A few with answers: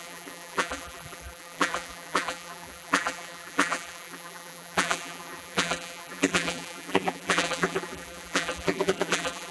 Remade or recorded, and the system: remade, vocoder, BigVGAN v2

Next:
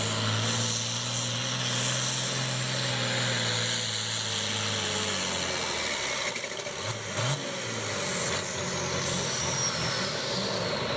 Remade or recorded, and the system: recorded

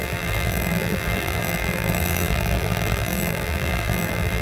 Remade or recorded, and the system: remade, vocoder, BigVGAN v2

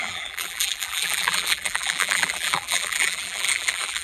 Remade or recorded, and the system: remade, vocoder, BigVGAN v2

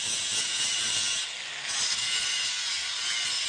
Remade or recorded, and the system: recorded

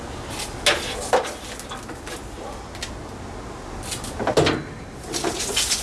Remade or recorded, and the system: recorded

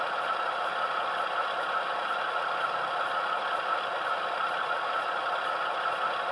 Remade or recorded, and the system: recorded